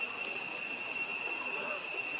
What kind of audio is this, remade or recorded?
recorded